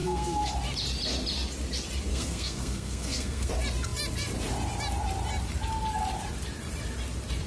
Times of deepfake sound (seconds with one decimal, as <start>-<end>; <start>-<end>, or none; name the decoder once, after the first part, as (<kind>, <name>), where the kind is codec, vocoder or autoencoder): 0.0-0.5 (codec, SNAC); 2.1-3.5